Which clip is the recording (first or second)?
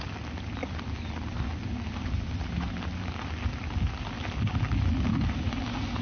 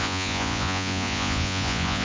first